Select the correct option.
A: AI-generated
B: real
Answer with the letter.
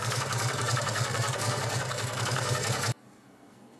A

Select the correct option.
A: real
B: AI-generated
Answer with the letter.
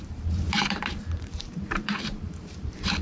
B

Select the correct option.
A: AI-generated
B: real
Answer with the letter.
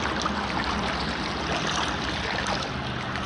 B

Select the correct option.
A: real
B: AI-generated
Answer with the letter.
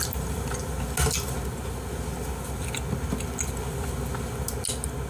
A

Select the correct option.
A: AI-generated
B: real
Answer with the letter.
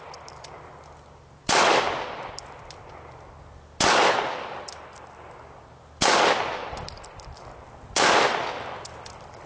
B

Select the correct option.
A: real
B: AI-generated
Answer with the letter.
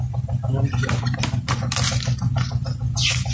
A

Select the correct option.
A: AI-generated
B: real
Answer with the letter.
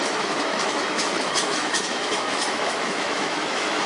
A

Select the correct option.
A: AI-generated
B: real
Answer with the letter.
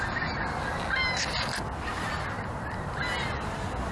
B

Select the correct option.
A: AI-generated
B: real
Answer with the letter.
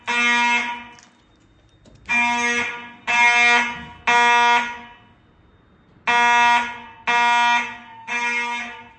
B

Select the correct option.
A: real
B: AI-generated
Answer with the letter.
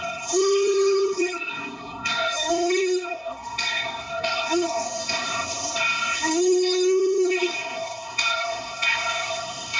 B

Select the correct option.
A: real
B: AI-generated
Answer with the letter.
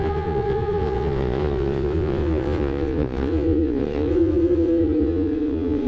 B